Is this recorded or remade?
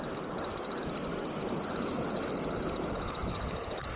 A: recorded